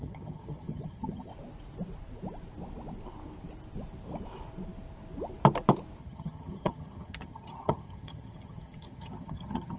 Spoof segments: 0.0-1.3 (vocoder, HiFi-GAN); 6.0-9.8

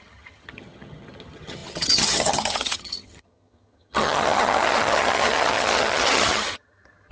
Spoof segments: 0.0-7.1 (vocoder, HiFi-GAN)

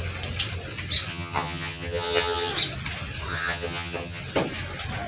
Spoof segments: 1.1-2.5 (vocoder, HiFi-GAN); 3.3-4.2

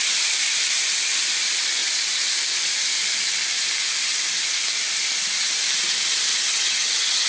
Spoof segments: 6.3-7.3 (vocoder, HiFi-GAN)

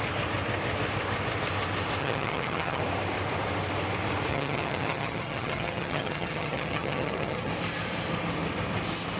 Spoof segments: 2.0-2.8 (vocoder, HiFi-GAN); 4.3-7.5

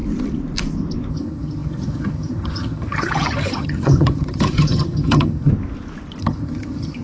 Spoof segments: 1.1-5.5 (vocoder, HiFi-GAN); 6.2-7.0

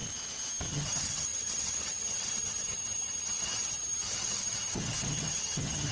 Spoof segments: 0.7-5.9 (vocoder, HiFi-GAN)

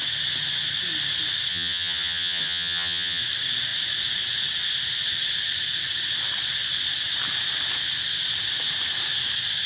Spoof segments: 1.5-3.2 (vocoder, HiFi-GAN)